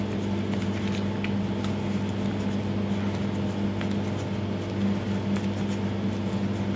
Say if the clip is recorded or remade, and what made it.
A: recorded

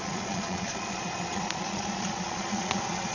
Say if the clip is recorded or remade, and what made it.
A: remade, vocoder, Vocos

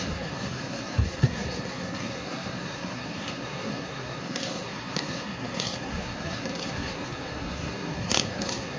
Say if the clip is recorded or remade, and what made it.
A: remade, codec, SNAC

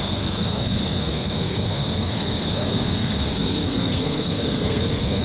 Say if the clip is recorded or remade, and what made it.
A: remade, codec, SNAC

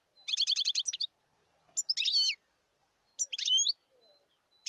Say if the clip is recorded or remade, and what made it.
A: recorded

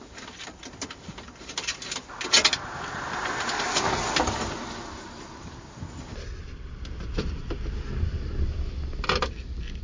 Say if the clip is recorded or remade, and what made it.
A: recorded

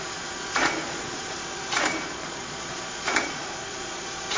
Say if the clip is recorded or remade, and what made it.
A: remade, vocoder, Vocos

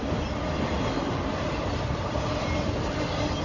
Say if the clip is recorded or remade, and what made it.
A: recorded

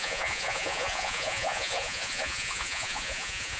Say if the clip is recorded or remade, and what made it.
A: remade, vocoder, Vocos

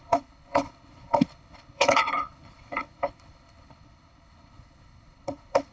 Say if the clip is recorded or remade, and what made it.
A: remade, codec, HILCodec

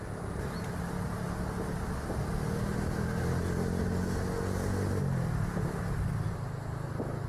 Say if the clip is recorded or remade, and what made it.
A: recorded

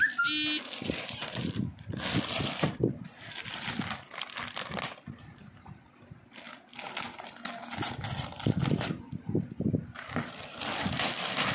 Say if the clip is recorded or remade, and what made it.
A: recorded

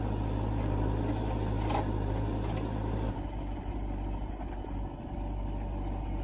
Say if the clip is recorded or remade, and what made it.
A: recorded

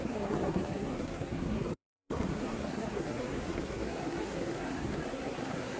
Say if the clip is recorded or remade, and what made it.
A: remade, codec, SNAC